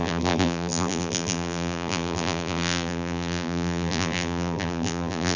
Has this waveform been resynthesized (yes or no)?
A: yes